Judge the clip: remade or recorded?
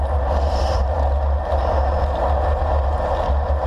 recorded